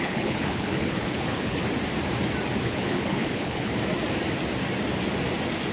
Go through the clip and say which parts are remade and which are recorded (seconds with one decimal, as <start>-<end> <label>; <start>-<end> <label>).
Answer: 0.0-1.6 remade; 1.6-2.6 recorded; 2.6-3.7 remade; 3.7-5.7 recorded

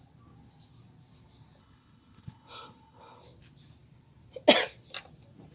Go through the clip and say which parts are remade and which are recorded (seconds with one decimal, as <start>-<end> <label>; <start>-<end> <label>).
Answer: 0.0-1.6 recorded; 1.6-3.2 remade; 3.2-5.5 recorded

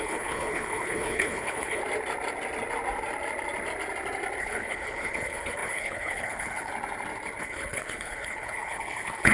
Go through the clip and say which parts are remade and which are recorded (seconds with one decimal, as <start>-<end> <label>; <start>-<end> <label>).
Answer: 0.0-1.8 remade; 1.8-4.4 recorded; 4.4-6.7 remade; 6.7-7.4 recorded; 7.4-9.3 remade

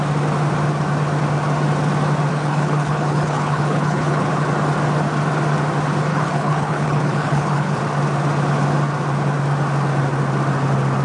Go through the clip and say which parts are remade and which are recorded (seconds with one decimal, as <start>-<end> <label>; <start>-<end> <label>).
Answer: 0.0-2.3 recorded; 2.3-4.3 remade; 4.3-6.1 recorded; 6.1-7.8 remade; 7.8-11.0 recorded

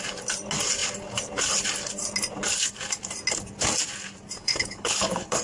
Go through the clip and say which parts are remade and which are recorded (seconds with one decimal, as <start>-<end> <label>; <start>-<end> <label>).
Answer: 0.0-4.4 recorded; 4.4-5.4 remade

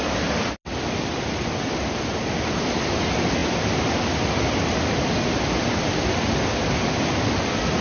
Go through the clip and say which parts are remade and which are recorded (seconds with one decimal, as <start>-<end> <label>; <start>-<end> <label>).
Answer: 0.0-7.8 recorded

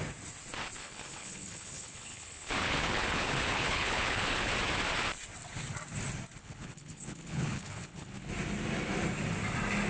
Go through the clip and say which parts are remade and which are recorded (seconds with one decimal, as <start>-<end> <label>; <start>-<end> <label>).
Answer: 0.0-0.8 recorded; 0.8-4.5 remade; 4.5-6.4 recorded; 6.4-8.3 remade; 8.3-9.9 recorded

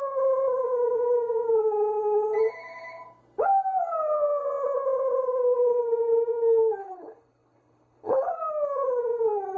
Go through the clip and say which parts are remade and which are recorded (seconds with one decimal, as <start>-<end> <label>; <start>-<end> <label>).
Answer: 0.0-6.8 recorded; 6.8-8.3 remade; 8.3-9.6 recorded